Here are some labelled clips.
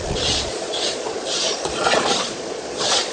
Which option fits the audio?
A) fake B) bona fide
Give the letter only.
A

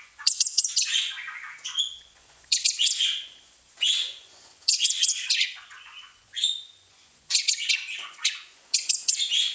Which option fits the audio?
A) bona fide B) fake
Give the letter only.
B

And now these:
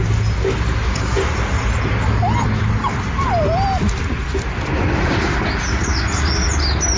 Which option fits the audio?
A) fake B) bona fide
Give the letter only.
B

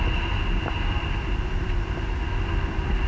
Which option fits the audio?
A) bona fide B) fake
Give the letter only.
A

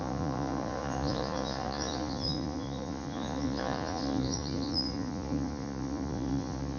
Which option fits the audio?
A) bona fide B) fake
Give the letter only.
B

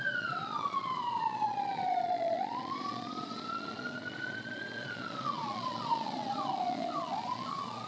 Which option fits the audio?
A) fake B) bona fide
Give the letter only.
A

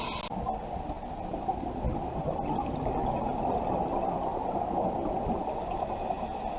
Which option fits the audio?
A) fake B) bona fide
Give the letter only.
B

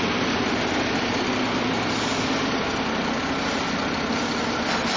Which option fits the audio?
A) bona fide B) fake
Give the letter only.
A